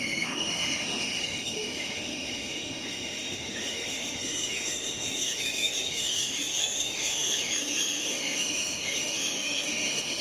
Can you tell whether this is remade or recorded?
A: remade